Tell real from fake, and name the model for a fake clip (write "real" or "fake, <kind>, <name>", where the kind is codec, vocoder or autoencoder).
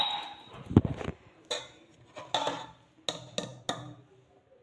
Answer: real